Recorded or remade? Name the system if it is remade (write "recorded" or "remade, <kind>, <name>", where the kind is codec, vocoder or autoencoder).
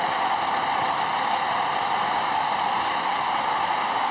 recorded